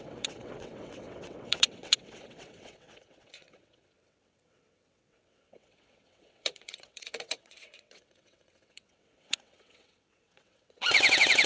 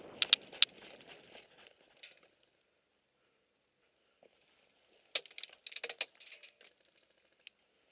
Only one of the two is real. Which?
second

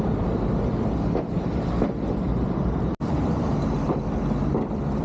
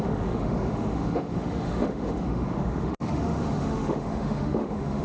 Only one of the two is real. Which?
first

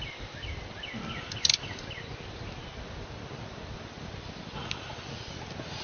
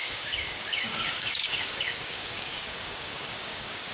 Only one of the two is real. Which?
first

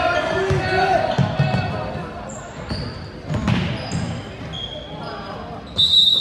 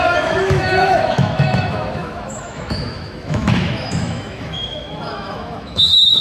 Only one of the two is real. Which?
first